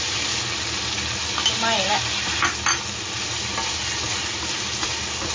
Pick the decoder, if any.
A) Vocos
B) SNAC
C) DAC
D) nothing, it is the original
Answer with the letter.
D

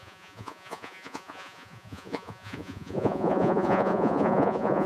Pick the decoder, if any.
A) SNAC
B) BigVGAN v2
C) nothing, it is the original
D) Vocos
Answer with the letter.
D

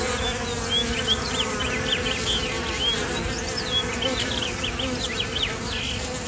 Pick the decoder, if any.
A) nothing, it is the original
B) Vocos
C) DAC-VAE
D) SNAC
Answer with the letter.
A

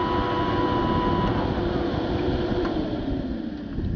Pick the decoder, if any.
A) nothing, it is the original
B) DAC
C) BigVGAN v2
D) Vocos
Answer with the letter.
A